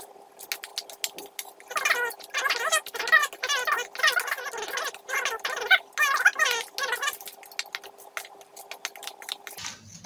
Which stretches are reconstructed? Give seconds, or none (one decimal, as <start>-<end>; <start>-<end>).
none